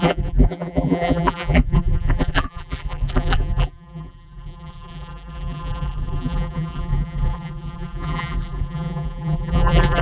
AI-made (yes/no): yes